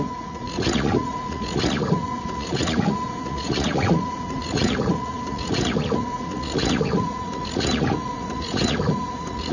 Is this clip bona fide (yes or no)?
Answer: no